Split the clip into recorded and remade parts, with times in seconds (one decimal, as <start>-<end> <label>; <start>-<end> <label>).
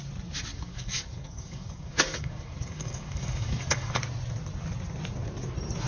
0.0-0.5 recorded; 0.5-4.0 remade; 4.0-5.9 recorded